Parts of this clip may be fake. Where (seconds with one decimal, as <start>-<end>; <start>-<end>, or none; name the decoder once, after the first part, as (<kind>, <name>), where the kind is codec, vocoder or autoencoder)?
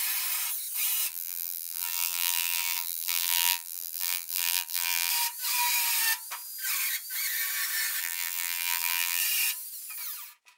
1.1-5.1 (vocoder, BigVGAN v2); 8.0-9.2